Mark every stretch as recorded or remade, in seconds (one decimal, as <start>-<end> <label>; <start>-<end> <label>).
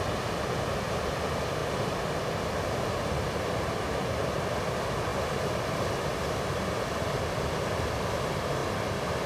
0.0-1.6 recorded; 1.6-3.4 remade; 3.4-9.3 recorded